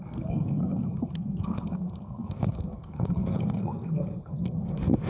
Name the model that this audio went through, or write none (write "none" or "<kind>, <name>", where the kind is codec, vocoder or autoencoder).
codec, SNAC